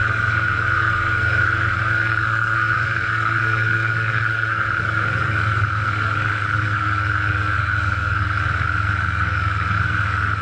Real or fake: fake